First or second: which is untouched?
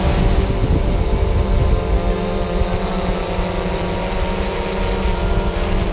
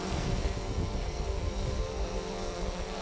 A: first